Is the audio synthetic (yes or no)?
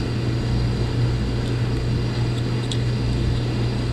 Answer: no